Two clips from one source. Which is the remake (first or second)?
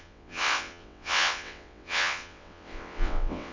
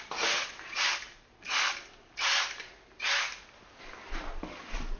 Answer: first